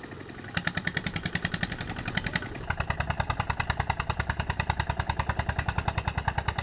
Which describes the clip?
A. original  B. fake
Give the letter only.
B